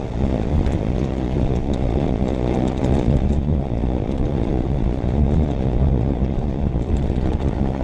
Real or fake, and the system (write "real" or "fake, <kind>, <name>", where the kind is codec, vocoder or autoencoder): fake, vocoder, Vocos